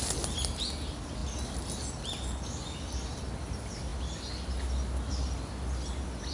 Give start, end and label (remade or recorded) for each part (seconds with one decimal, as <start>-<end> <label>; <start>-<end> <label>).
0.0-6.3 recorded